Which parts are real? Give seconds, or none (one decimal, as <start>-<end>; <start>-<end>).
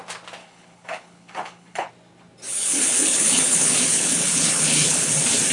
0.0-0.4; 1.9-2.5; 5.1-5.5